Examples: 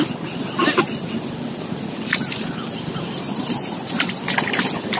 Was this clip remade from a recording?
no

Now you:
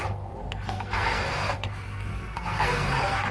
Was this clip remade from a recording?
yes